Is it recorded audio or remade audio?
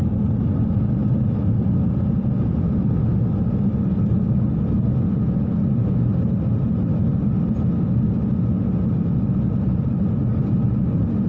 recorded